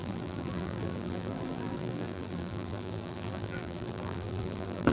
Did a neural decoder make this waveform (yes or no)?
yes